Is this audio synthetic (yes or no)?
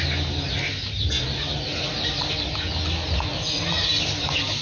no